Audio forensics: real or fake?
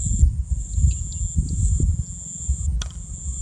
real